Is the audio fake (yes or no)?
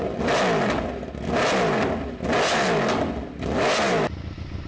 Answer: no